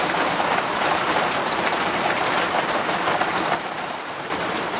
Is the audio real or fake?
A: fake